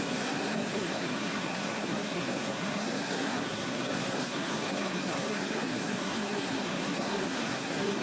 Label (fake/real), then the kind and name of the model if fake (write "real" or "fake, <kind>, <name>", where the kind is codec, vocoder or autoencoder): fake, codec, SNAC